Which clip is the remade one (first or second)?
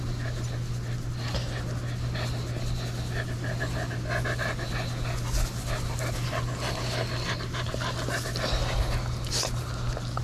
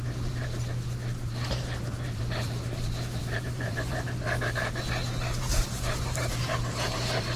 second